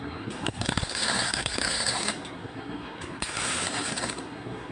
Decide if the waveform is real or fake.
fake